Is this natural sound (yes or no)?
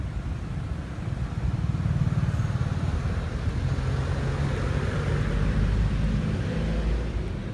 yes